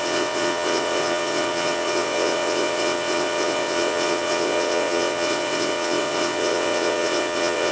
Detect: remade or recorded remade